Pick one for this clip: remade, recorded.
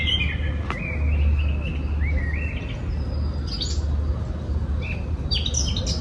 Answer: recorded